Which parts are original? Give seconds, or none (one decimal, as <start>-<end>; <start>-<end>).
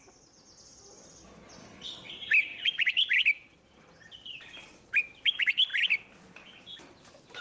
0.0-1.6; 2.1-7.4